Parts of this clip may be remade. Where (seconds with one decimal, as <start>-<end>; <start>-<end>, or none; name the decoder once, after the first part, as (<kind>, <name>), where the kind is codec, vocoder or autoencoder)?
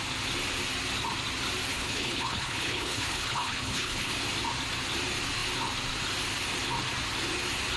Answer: 1.7-4.1 (codec, HILCodec)